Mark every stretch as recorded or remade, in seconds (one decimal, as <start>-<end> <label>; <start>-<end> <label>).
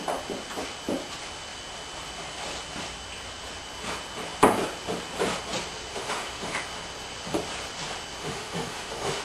0.0-5.9 recorded; 5.9-6.6 remade; 6.6-8.2 recorded; 8.2-9.2 remade